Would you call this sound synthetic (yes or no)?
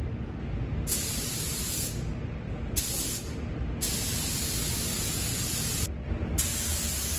no